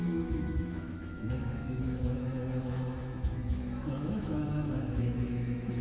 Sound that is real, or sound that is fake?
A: fake